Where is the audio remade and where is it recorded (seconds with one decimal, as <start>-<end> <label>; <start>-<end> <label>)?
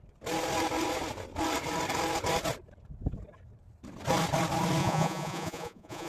0.0-4.8 recorded; 4.8-6.1 remade